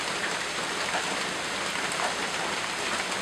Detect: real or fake real